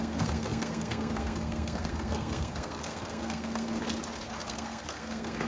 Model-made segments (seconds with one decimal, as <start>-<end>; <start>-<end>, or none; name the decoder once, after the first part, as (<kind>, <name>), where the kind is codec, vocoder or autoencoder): 0.0-3.8 (codec, SNAC); 4.4-5.5